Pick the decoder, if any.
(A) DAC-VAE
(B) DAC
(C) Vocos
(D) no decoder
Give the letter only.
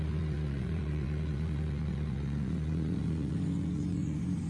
C